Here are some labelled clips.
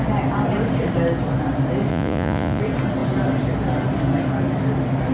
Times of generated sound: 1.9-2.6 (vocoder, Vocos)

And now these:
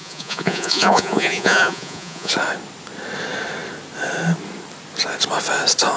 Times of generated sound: 0.0-2.3 (vocoder, Vocos)

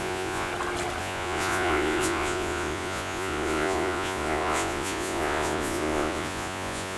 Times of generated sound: 0.0-0.5 (vocoder, Vocos); 1.0-7.0

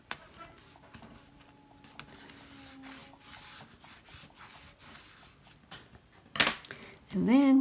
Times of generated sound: none

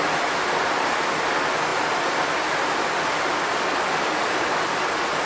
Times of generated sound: none